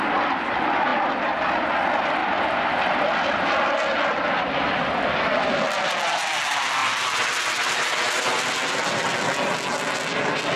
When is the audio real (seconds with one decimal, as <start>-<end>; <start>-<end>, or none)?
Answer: 0.0-2.2; 5.4-10.6